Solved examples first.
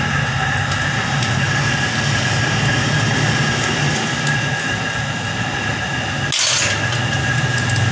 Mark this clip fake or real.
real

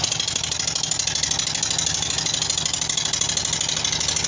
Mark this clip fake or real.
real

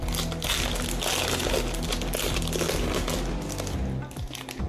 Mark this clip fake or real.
real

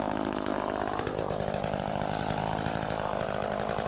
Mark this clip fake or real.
fake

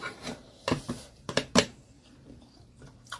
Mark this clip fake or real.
fake